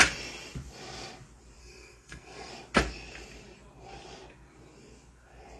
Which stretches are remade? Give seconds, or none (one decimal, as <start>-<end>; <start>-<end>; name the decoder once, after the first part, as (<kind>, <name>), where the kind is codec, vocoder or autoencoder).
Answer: 1.6-2.5 (codec, SNAC)